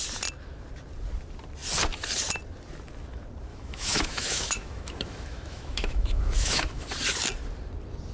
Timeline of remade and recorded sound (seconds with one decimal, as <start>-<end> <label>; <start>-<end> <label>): 0.0-3.5 recorded; 3.5-6.8 remade; 6.8-8.1 recorded